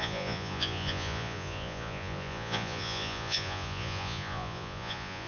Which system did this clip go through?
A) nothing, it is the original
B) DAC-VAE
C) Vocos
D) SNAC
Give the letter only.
C